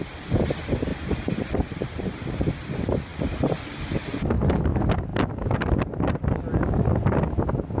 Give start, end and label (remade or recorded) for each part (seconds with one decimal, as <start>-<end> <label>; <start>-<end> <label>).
0.0-0.9 recorded; 0.9-2.5 remade; 2.5-7.8 recorded